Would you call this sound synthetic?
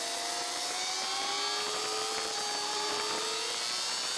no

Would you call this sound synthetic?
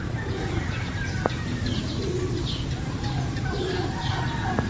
no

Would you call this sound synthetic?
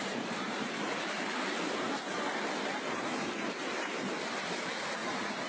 yes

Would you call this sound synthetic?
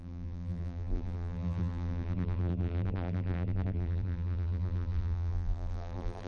yes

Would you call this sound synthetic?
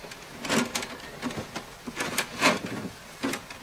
no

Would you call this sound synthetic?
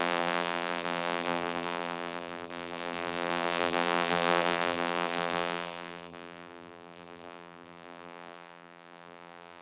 yes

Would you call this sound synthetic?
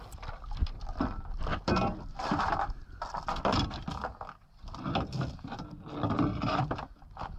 no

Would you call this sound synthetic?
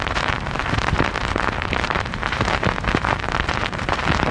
yes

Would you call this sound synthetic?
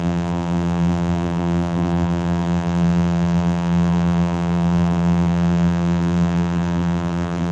yes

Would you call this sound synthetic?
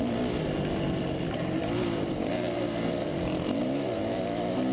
no